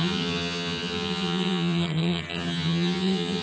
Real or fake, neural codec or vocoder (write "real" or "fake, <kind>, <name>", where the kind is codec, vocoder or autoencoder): fake, vocoder, HiFi-GAN